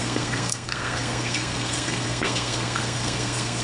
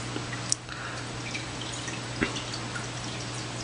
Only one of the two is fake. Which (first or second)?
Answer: first